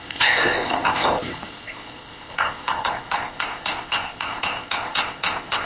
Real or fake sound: fake